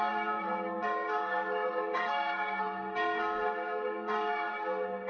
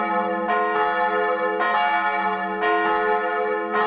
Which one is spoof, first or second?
first